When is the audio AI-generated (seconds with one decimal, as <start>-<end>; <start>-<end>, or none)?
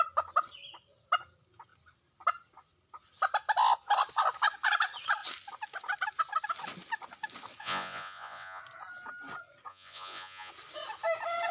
7.6-8.6; 9.7-10.5